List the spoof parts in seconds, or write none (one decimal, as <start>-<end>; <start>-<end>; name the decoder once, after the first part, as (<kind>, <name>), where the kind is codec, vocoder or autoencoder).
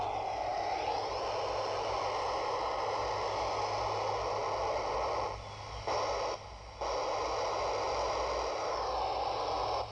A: none